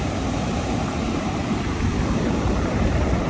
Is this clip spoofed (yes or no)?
yes